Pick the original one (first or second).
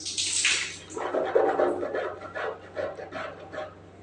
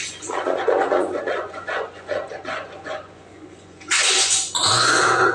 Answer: first